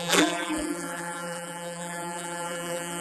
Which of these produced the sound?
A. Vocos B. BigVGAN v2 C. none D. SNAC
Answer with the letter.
B